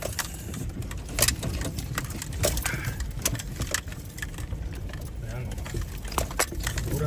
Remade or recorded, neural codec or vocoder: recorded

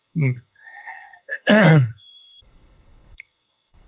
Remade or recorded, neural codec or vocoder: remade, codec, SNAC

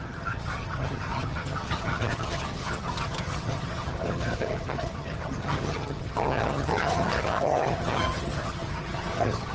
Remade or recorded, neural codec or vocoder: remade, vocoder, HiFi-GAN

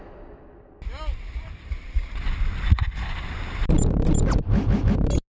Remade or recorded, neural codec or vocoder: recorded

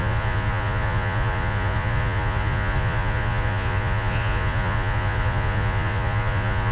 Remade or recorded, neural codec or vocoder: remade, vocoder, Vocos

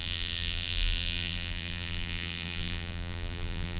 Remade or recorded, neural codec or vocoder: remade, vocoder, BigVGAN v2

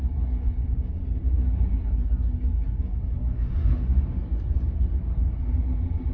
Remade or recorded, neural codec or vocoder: recorded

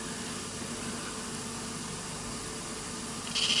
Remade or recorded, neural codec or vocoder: recorded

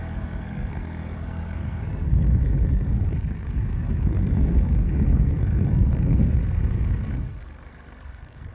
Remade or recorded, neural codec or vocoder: remade, codec, SNAC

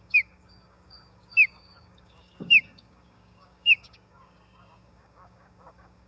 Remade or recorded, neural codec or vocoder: remade, codec, DAC